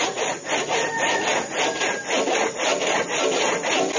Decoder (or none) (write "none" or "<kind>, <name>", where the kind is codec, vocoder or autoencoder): none